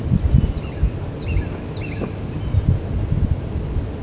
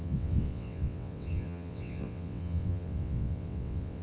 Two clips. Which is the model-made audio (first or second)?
second